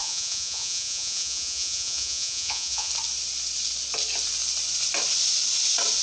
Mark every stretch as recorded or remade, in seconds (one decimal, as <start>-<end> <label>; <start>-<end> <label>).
0.0-2.9 remade; 2.9-6.0 recorded